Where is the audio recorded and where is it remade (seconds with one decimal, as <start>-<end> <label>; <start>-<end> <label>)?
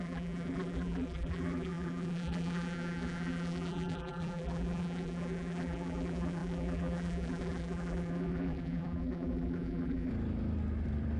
0.0-10.1 remade; 10.1-11.2 recorded